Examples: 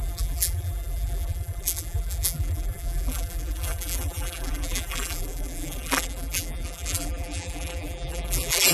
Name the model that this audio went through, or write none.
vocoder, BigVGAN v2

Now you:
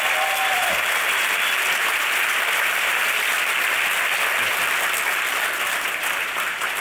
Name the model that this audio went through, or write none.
vocoder, BigVGAN v2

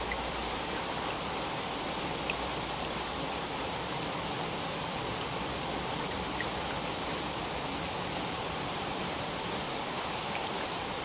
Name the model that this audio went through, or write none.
vocoder, BigVGAN v2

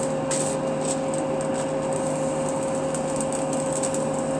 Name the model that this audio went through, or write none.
none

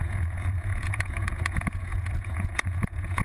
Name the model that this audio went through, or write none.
vocoder, Vocos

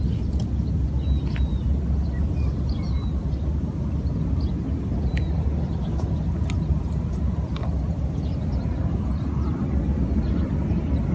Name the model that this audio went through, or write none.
none